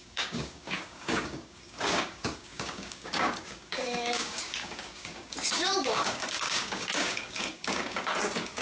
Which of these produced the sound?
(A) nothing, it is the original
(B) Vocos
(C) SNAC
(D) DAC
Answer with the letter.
D